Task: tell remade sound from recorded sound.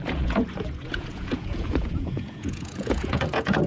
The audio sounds remade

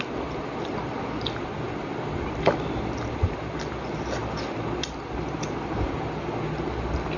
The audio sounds recorded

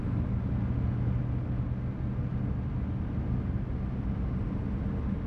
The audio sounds recorded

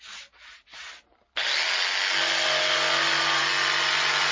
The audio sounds recorded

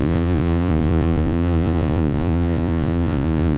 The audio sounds remade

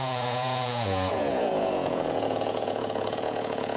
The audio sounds remade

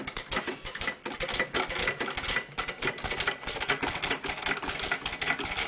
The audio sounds recorded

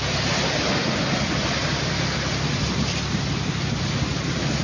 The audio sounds recorded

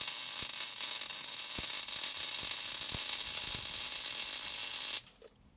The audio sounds recorded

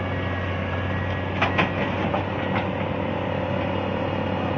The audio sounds recorded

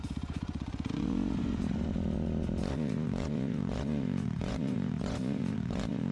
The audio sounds remade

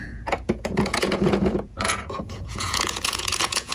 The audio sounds remade